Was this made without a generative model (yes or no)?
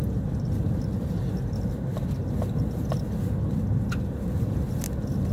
yes